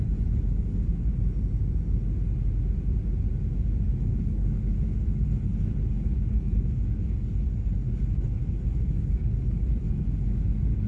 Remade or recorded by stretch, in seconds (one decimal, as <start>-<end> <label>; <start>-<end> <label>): 0.0-1.1 remade; 1.1-4.0 recorded; 4.0-10.9 remade